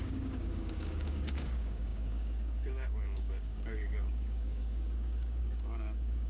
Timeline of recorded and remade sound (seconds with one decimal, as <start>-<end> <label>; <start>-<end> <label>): 0.0-6.3 remade